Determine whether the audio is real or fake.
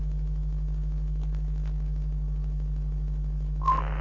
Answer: real